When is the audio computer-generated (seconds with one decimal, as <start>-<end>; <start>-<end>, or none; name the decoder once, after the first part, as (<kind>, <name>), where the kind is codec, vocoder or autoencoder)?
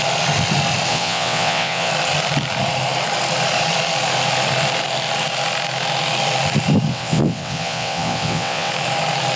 0.9-1.9 (vocoder, WaveNeXt); 6.9-8.7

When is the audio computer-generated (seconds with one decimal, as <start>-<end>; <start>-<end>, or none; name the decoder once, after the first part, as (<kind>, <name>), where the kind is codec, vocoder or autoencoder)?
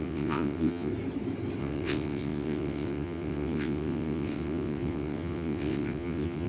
0.0-0.9 (vocoder, WaveNeXt); 1.6-6.5